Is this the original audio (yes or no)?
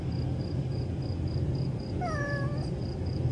yes